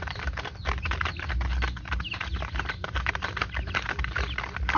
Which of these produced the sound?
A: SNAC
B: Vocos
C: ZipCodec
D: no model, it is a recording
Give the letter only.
D